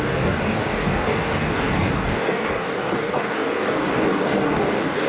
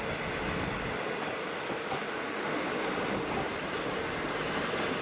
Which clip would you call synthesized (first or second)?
first